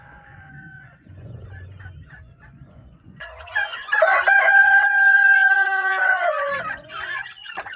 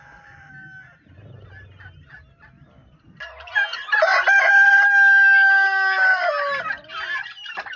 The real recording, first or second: second